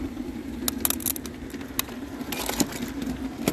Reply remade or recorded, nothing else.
recorded